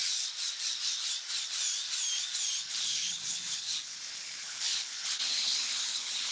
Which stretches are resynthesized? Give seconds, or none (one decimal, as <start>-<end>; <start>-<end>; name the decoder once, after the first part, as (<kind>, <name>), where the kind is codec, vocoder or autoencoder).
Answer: 2.7-6.3 (codec, HILCodec)